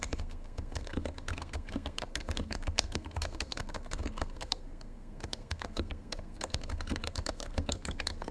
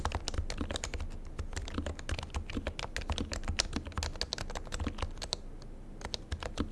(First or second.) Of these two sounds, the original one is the second